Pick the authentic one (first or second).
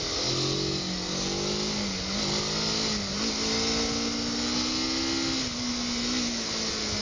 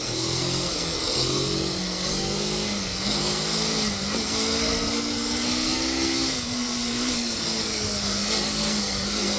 first